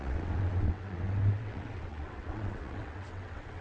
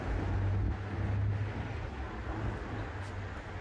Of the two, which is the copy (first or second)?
first